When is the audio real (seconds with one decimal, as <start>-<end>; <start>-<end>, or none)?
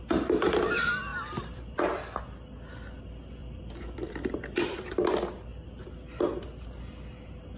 0.0-1.1; 2.2-3.4; 5.1-7.6